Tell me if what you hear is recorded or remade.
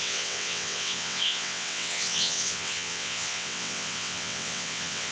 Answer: remade